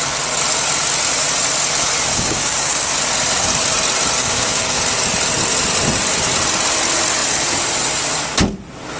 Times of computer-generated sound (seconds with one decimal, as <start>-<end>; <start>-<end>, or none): 2.1-2.9; 4.2-4.8